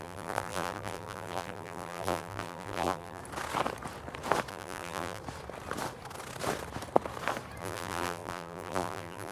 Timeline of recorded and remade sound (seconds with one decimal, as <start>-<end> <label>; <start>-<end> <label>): 0.0-3.2 remade; 3.2-4.5 recorded; 4.5-5.2 remade; 5.2-7.6 recorded; 7.6-9.3 remade